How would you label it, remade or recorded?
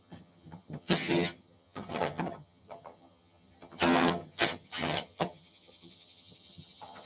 remade